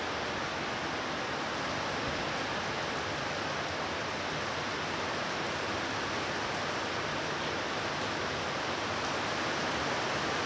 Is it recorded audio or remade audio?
recorded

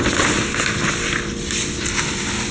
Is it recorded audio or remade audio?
recorded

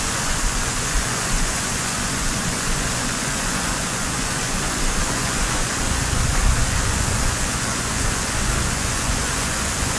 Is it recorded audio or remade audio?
remade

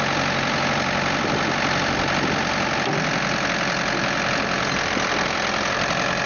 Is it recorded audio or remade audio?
recorded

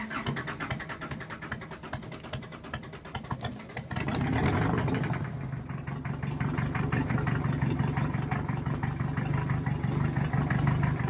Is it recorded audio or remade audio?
recorded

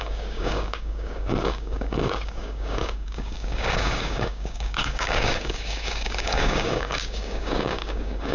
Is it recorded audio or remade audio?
remade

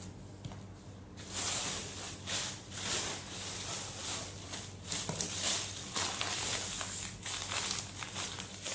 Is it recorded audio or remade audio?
recorded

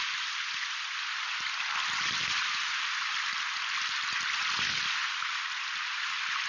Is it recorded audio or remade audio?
recorded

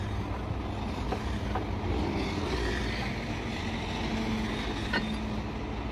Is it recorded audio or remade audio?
recorded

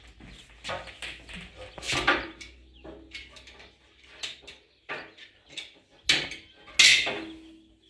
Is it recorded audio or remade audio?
recorded